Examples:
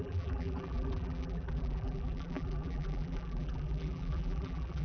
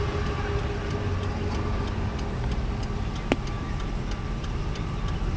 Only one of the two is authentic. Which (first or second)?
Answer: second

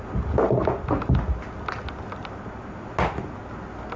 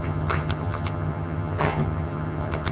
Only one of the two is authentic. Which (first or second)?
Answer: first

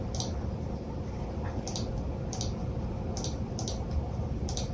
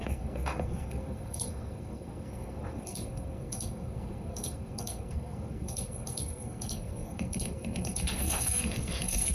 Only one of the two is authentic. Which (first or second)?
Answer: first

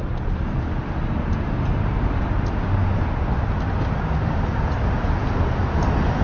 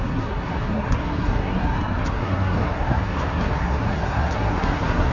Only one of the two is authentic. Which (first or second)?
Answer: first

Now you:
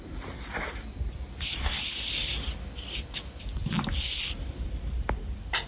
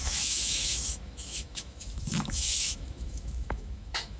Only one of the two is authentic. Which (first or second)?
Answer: first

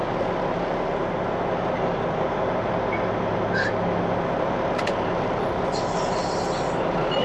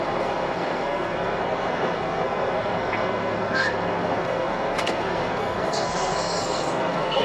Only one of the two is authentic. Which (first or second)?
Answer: first